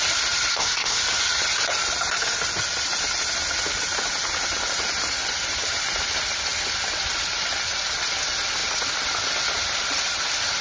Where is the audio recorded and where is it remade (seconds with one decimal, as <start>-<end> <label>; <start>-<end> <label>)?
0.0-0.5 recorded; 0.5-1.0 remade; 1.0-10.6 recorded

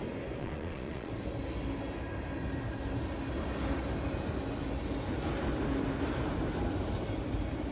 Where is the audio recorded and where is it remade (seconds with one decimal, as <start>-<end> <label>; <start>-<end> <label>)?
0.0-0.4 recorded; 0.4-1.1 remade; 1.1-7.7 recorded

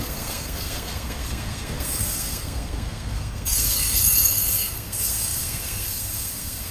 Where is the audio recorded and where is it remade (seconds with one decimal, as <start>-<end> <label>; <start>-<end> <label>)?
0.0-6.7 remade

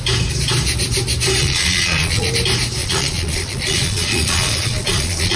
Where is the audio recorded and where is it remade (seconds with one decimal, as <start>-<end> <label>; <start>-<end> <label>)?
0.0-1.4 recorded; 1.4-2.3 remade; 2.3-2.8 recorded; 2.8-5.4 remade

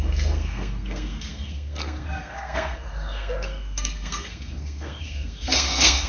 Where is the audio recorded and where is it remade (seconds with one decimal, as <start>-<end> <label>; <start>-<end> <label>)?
0.0-6.1 remade

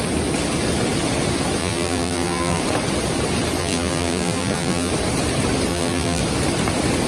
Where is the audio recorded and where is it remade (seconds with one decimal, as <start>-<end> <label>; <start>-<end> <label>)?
0.0-1.6 recorded; 1.6-2.6 remade; 2.6-3.6 recorded; 3.6-4.9 remade; 4.9-5.7 recorded; 5.7-6.2 remade; 6.2-7.1 recorded